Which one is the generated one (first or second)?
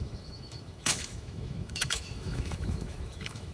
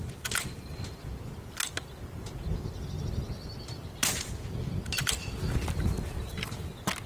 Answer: first